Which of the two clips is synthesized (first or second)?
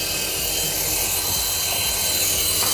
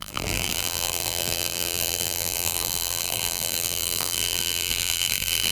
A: second